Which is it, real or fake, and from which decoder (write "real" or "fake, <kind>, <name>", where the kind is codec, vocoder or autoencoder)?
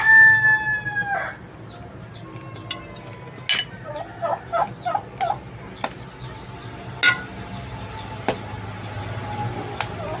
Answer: real